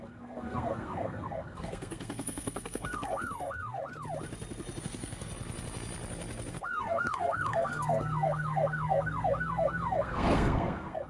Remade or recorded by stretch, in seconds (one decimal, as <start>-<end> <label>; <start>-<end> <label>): 0.0-3.8 remade; 3.8-4.8 recorded; 4.8-5.3 remade; 5.3-6.5 recorded; 6.5-11.1 remade